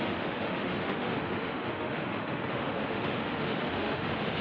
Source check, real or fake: fake